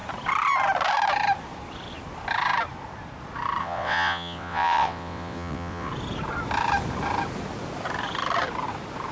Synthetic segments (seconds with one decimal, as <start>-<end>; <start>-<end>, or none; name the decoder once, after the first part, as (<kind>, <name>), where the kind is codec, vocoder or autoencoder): 3.6-5.9 (vocoder, WaveNeXt)

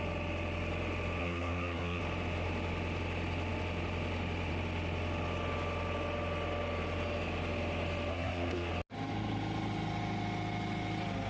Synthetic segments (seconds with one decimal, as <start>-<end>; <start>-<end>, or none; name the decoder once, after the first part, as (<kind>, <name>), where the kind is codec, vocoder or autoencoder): 1.2-2.0 (codec, SNAC); 8.1-8.7

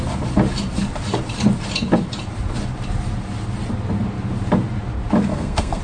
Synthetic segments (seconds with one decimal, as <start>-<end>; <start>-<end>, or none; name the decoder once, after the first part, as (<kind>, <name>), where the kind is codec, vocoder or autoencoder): 5.3-5.8 (codec, SNAC)

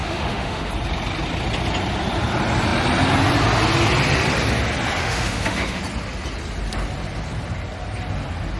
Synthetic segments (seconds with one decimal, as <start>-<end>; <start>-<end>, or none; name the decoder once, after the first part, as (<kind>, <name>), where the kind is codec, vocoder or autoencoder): 0.0-0.7 (autoencoder, DAC-VAE); 5.0-5.8

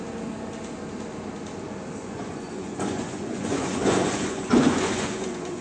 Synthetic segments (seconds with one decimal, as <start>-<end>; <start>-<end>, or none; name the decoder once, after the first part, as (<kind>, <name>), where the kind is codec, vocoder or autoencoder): 2.0-5.6 (vocoder, Vocos)

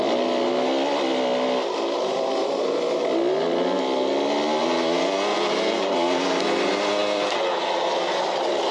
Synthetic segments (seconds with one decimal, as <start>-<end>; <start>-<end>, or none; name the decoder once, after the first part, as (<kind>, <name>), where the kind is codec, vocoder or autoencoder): 5.3-5.9 (vocoder, BigVGAN v2)

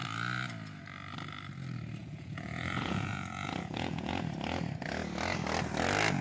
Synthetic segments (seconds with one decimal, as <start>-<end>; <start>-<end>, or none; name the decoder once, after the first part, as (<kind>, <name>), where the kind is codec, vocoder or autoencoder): 2.0-4.1 (vocoder, Vocos)